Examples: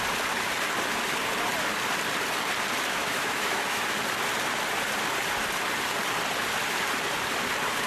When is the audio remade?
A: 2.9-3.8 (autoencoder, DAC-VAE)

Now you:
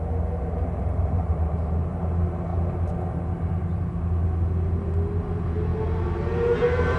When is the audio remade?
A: none

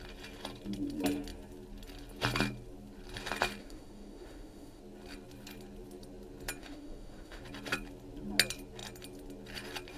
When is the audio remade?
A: 3.6-4.8 (autoencoder, DAC-VAE); 6.6-7.4

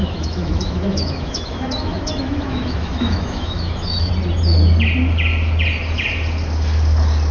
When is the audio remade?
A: 0.0-4.1 (autoencoder, DAC-VAE)

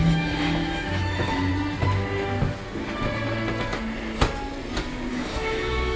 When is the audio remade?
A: 0.0-1.5 (autoencoder, DAC-VAE); 5.1-6.0

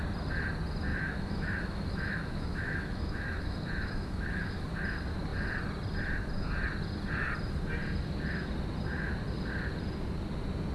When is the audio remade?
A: 0.9-4.6 (autoencoder, DAC-VAE)